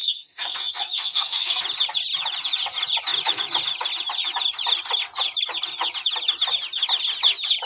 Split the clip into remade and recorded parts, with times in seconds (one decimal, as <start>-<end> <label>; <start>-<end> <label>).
0.0-1.6 remade; 1.6-7.7 recorded